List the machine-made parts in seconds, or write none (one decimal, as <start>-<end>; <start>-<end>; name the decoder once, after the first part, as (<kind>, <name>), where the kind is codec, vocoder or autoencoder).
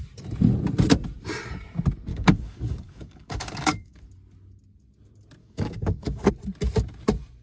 2.1-4.0 (codec, DAC); 5.4-6.3